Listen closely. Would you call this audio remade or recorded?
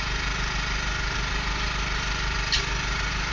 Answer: recorded